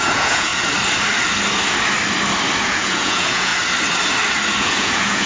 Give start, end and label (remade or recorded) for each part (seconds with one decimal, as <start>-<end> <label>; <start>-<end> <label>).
0.0-0.5 remade; 0.5-2.6 recorded; 2.6-3.5 remade; 3.5-4.6 recorded; 4.6-5.3 remade